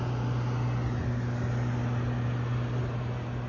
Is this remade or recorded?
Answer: recorded